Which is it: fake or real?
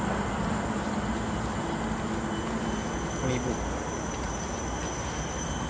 real